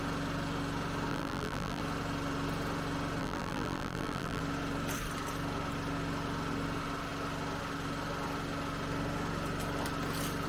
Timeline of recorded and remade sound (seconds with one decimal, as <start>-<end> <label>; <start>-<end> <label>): 0.0-1.1 recorded; 1.1-1.8 remade; 1.8-3.2 recorded; 3.2-4.4 remade; 4.4-10.5 recorded